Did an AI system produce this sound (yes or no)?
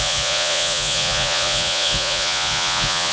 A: yes